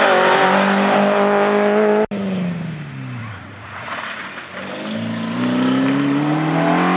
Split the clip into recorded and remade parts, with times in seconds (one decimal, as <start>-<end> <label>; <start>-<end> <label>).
0.0-3.2 recorded; 3.2-4.3 remade; 4.3-7.0 recorded